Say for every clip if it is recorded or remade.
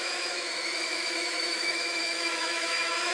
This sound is remade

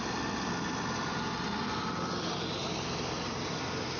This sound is recorded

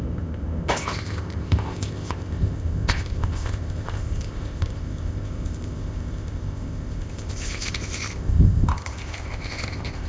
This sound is remade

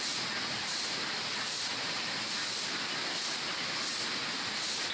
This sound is recorded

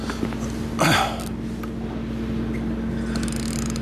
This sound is recorded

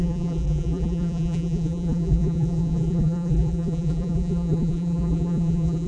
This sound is remade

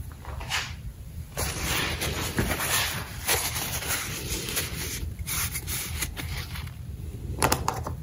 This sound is remade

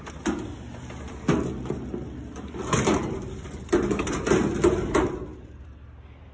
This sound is recorded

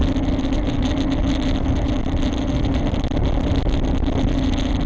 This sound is recorded